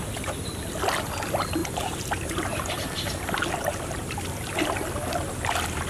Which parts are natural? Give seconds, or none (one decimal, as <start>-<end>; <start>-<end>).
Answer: 0.0-5.9